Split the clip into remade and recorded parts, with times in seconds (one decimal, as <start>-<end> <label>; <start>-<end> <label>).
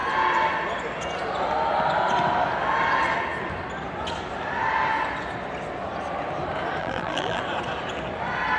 0.0-6.8 recorded; 6.8-7.4 remade; 7.4-8.6 recorded